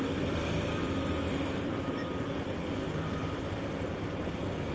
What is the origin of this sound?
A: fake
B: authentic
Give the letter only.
A